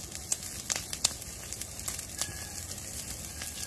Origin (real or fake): real